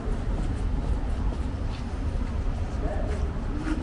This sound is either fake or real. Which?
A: real